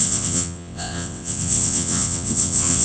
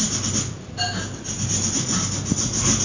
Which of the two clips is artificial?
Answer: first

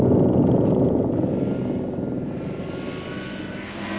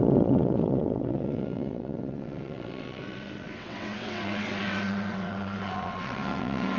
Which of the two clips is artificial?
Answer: second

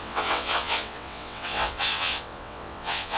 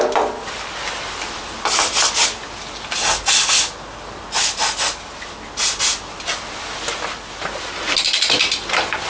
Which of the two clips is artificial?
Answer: first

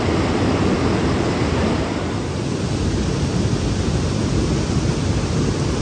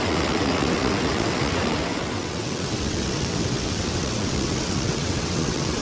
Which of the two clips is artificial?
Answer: second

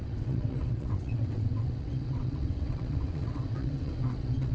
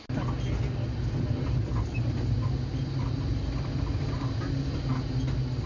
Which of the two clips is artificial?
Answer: first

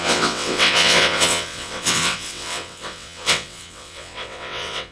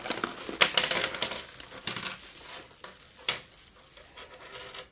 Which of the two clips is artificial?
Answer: first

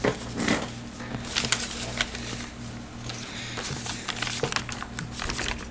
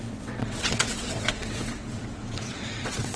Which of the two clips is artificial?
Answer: second